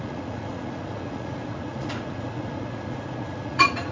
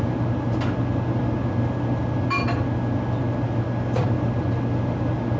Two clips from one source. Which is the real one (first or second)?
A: second